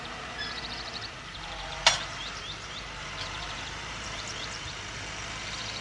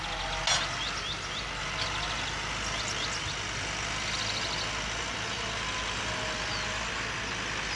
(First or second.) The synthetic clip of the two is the first